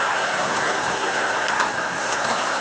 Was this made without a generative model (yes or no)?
no